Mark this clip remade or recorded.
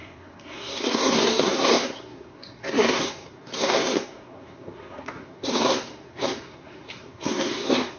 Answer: remade